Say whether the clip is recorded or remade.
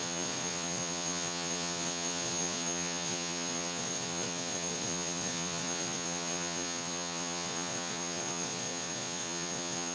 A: remade